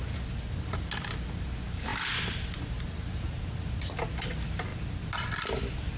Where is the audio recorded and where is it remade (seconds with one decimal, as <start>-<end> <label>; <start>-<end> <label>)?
0.0-6.0 recorded